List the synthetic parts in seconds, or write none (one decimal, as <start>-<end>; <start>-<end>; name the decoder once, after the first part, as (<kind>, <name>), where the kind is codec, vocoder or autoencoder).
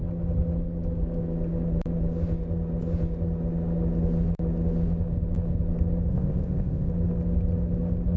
6.1-6.9 (codec, ZipCodec)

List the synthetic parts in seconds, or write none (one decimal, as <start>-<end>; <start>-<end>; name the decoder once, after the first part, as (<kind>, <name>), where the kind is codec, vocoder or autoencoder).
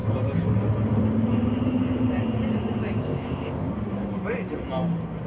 3.0-3.7 (codec, ZipCodec)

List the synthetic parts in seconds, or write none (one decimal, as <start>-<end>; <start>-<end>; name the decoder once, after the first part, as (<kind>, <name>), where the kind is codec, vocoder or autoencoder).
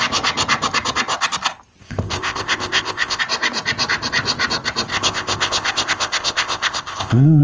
1.8-3.2 (codec, ZipCodec); 4.9-7.4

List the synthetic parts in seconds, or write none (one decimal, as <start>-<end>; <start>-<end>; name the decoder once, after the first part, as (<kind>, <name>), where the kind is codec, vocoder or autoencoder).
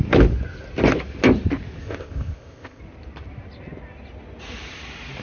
1.8-2.8 (codec, ZipCodec)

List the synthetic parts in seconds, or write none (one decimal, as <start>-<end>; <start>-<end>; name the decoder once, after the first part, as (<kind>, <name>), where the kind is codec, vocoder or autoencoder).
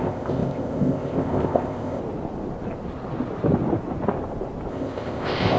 0.0-2.0 (codec, ZipCodec); 4.7-5.6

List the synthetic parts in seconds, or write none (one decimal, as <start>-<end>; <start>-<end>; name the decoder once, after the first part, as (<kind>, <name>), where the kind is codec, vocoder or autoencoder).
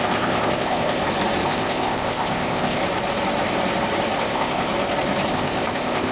0.0-1.0 (codec, ZipCodec); 1.5-2.8; 4.2-4.7; 5.3-6.1